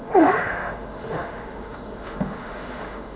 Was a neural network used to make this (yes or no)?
yes